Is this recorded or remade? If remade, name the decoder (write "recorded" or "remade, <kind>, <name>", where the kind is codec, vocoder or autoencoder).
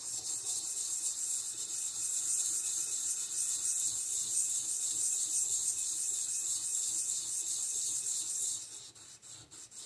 recorded